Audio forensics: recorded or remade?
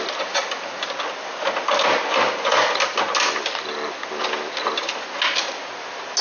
recorded